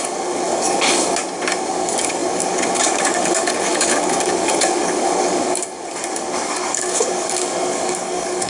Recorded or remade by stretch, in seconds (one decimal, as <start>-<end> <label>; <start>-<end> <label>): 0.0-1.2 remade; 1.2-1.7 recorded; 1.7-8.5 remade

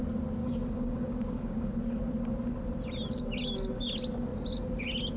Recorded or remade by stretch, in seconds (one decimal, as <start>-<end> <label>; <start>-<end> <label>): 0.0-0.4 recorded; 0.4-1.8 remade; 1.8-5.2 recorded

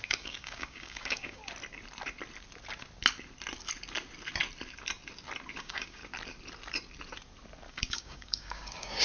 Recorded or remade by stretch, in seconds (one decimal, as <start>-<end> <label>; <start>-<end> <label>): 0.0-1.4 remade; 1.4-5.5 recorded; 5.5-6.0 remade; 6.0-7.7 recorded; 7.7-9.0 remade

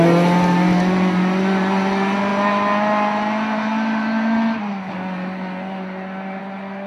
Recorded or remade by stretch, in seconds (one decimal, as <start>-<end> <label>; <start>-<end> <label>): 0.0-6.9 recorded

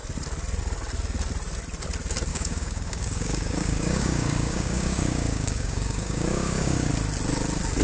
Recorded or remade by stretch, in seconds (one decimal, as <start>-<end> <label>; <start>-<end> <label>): 0.0-2.3 recorded; 2.3-6.9 remade; 6.9-7.8 recorded

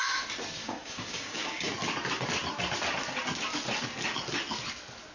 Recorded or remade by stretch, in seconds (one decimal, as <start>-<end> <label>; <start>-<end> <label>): 0.0-0.6 recorded; 0.6-1.7 remade; 1.7-5.1 recorded